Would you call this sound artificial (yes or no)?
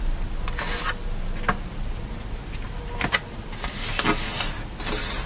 no